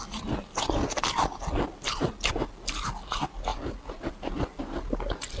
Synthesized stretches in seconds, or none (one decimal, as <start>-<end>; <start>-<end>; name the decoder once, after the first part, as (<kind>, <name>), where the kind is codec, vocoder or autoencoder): none